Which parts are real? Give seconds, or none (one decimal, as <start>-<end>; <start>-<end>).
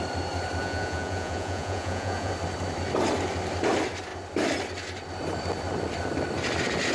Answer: 0.0-0.6; 2.3-6.9